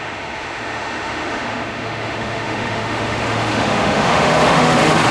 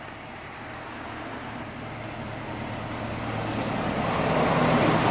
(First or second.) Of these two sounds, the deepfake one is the first